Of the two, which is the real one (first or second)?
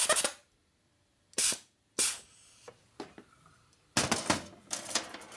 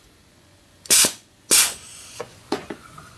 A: first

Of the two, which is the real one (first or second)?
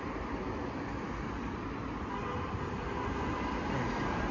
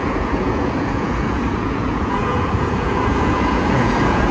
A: first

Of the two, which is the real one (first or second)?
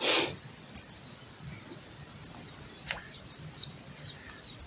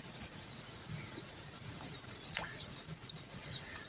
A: first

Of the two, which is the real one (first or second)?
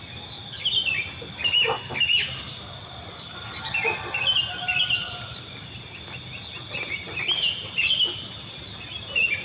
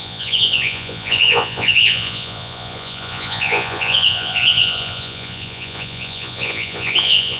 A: first